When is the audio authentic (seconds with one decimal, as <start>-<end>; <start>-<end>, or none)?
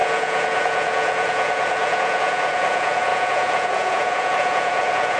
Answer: none